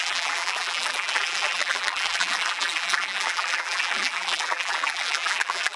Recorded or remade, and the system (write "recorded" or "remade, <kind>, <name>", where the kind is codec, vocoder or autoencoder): remade, vocoder, BigVGAN v2